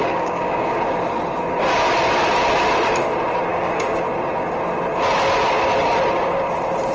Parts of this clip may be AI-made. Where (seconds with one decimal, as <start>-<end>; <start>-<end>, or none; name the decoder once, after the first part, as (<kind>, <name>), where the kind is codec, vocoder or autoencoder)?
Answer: 0.0-0.8 (codec, DAC); 3.5-4.0